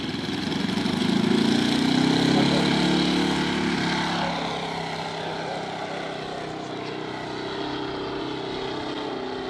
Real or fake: real